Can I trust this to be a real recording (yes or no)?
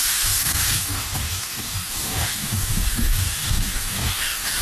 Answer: no